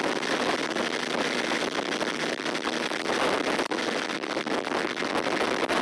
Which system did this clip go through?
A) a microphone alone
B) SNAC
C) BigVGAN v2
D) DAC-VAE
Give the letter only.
A